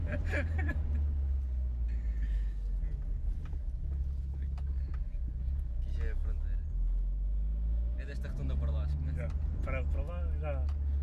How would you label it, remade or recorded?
recorded